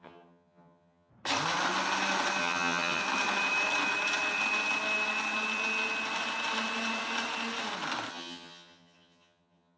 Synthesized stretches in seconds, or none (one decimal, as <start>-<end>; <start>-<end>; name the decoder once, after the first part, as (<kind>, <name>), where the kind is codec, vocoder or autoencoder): 0.0-1.1 (vocoder, HiFi-GAN); 2.4-3.0; 8.1-9.8